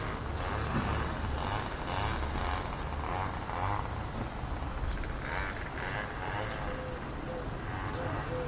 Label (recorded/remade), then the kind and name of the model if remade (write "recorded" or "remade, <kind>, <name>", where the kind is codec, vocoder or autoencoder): recorded